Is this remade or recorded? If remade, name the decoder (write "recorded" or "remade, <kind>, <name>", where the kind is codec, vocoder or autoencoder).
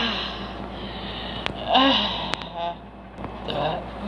recorded